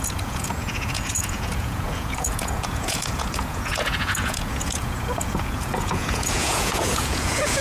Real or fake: fake